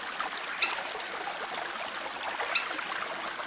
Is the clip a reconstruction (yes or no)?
no